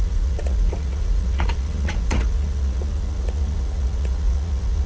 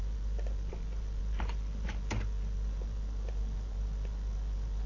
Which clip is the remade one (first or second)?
first